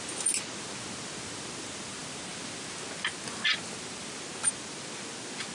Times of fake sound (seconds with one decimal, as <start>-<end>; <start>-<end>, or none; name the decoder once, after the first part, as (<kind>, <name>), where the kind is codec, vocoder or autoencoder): none